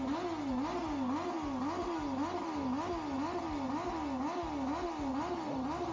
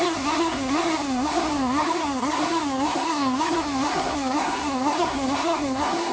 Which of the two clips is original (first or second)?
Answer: first